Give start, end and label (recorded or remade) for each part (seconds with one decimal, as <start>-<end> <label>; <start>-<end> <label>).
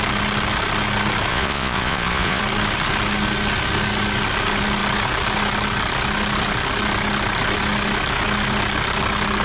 0.0-1.3 recorded; 1.3-2.4 remade; 2.4-9.4 recorded